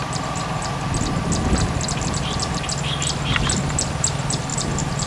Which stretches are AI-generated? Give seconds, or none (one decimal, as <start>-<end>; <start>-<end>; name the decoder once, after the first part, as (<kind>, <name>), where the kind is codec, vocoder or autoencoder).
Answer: 4.5-5.1 (vocoder, BigVGAN v2)